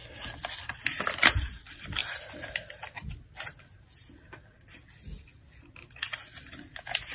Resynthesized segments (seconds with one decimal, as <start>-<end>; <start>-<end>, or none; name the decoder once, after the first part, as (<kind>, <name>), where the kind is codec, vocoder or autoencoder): 2.0-2.5 (vocoder, BigVGAN v2)